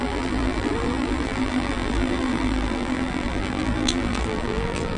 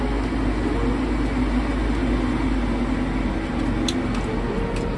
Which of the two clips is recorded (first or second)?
second